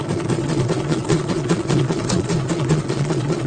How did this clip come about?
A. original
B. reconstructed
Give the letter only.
B